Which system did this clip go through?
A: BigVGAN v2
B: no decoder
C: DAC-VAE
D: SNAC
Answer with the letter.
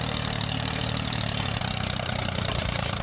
A